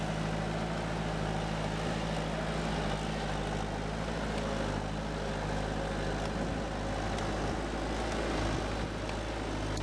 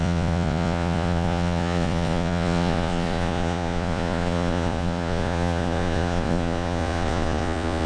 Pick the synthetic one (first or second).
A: second